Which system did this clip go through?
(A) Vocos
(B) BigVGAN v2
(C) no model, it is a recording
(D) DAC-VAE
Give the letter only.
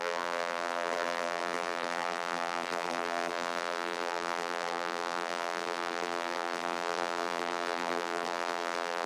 B